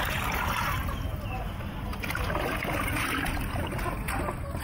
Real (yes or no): yes